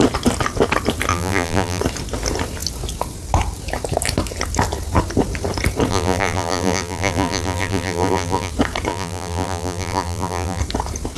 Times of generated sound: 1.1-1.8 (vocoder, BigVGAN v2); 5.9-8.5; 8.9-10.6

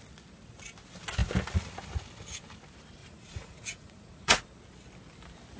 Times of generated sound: 3.0-4.4 (vocoder, Vocos)

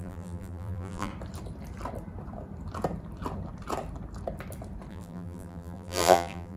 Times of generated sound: 0.0-1.1 (vocoder, BigVGAN v2); 4.9-6.6

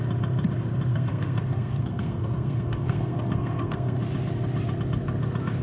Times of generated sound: 0.9-4.0 (codec, SNAC)

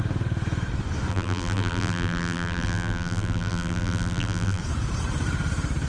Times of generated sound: 1.1-4.6 (vocoder, BigVGAN v2)

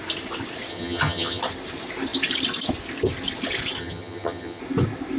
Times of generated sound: 0.7-1.4 (vocoder, HiFi-GAN); 3.8-4.6

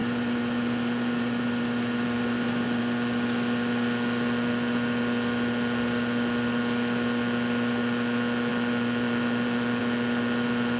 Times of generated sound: 0.0-2.8 (vocoder, BigVGAN v2); 8.5-9.8